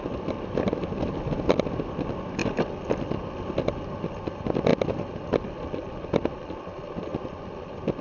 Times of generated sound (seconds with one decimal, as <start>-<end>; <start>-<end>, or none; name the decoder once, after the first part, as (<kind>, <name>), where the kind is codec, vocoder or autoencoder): none